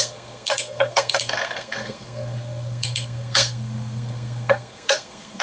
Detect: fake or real fake